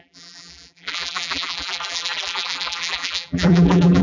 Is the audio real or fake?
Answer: fake